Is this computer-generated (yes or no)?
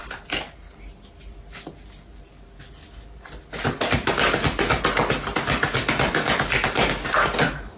no